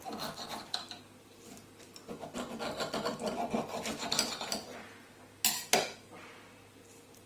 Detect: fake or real real